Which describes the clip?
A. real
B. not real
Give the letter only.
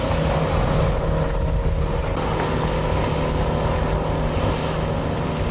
A